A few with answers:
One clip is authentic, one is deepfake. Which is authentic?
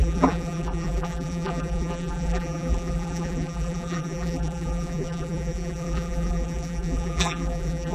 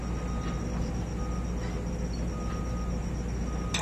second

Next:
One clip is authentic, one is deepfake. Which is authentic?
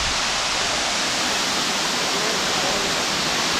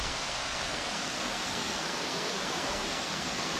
first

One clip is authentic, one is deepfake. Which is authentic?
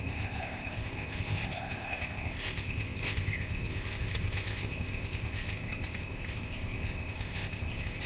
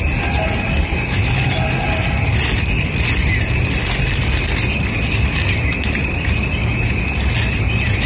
second